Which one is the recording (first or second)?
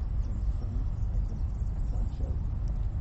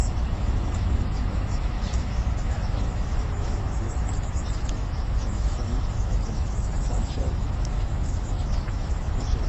first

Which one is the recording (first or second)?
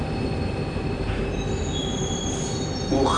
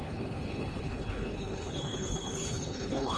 first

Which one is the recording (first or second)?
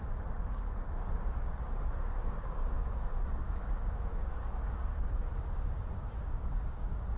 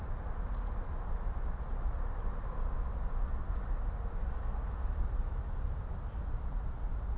second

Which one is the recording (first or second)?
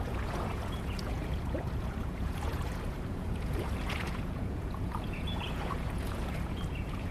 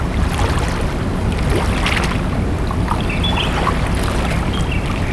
second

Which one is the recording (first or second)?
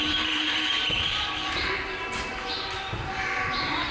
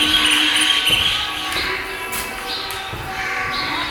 second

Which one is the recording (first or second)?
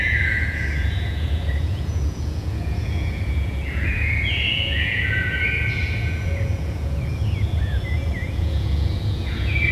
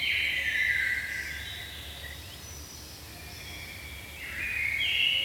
second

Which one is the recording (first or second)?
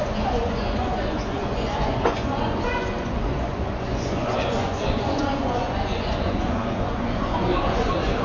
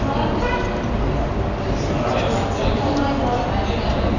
second